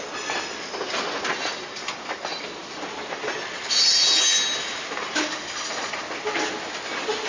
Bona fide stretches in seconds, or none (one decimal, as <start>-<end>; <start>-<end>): 0.0-7.3